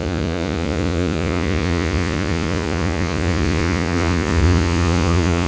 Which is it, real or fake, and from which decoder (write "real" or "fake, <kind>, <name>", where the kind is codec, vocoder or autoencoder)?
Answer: fake, vocoder, Vocos